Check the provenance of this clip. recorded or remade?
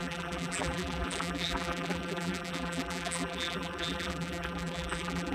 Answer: remade